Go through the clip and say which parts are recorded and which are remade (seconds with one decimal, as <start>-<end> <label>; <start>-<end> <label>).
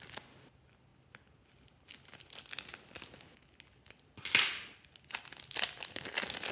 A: 0.0-6.5 recorded